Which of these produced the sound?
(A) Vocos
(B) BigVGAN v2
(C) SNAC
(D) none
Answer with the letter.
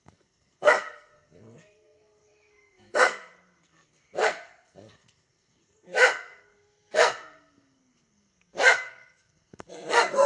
C